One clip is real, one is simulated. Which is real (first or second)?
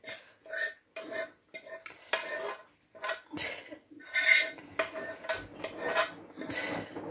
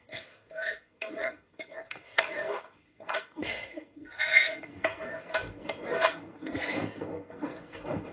first